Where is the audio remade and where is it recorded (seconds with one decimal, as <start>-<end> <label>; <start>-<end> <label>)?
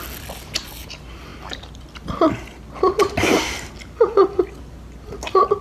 0.0-5.6 recorded